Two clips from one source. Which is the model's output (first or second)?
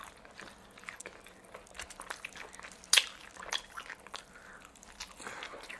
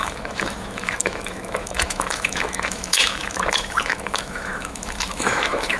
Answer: second